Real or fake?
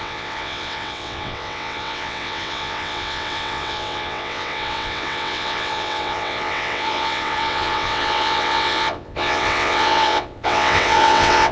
fake